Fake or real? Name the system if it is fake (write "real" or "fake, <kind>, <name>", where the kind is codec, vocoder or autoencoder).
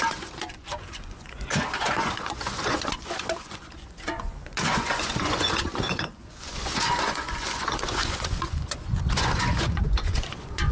fake, vocoder, Vocos